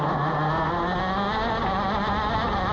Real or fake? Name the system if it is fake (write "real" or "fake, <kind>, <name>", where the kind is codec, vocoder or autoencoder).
real